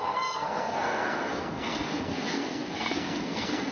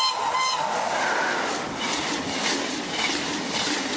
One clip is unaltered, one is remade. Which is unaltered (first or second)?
second